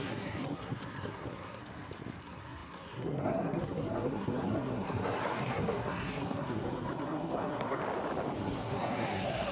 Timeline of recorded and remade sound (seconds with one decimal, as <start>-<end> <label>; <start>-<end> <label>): 0.0-1.6 remade; 1.6-2.2 recorded; 2.2-7.8 remade; 7.8-8.4 recorded; 8.4-9.5 remade